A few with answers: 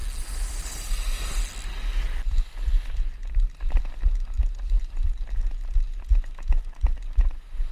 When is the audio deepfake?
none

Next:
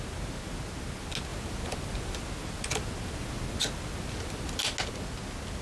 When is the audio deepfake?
none

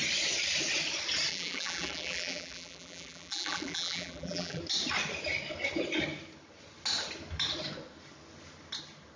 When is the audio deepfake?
1.3-4.6 (vocoder, BigVGAN v2)

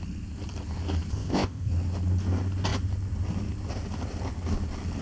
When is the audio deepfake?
1.1-1.7 (codec, ZipCodec)

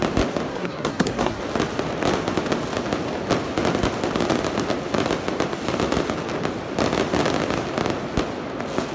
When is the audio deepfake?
0.5-1.4 (codec, SNAC)

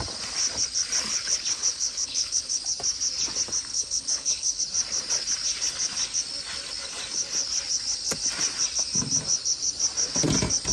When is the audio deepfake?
1.1-2.6 (codec, HILCodec); 3.7-4.6

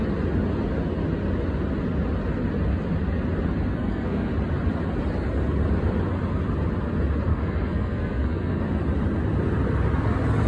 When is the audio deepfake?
3.7-4.3 (codec, SNAC); 7.3-8.6